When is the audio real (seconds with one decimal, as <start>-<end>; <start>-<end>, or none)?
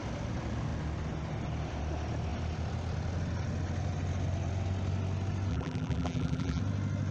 0.0-5.5; 6.6-7.1